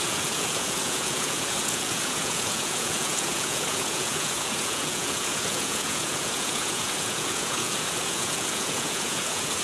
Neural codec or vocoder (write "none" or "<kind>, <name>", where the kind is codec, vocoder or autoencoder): vocoder, Vocos